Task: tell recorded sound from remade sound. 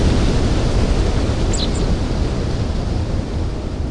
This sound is recorded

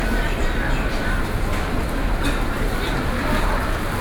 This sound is recorded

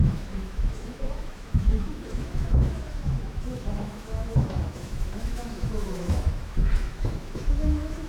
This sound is remade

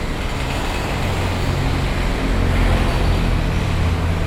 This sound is recorded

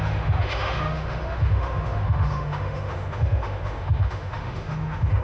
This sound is remade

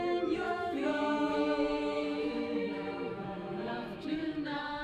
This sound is remade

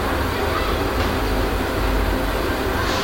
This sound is recorded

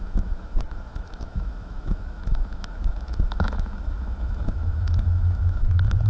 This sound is remade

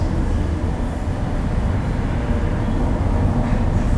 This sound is recorded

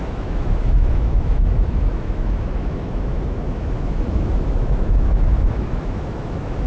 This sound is remade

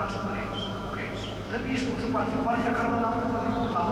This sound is remade